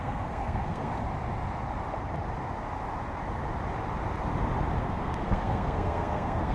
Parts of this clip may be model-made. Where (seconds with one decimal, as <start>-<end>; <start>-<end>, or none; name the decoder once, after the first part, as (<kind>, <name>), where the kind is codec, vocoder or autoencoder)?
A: 0.0-0.9 (codec, SNAC); 4.8-6.5